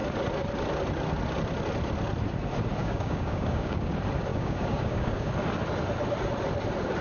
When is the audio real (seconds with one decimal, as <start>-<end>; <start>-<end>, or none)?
0.0-2.8; 3.9-4.3; 5.3-7.0